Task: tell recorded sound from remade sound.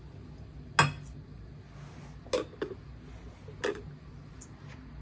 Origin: recorded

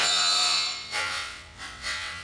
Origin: remade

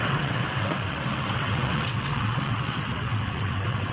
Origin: remade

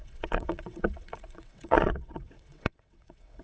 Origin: remade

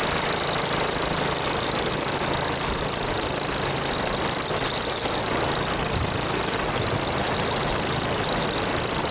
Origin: recorded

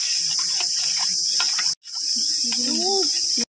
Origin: recorded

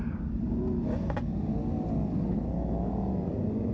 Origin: recorded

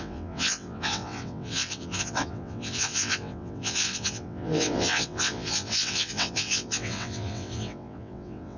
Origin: remade